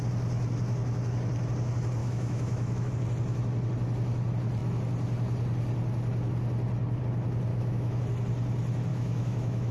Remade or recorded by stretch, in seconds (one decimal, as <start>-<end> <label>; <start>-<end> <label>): 0.0-2.0 recorded; 2.0-2.9 remade; 2.9-7.5 recorded; 7.5-8.0 remade; 8.0-8.9 recorded; 8.9-9.7 remade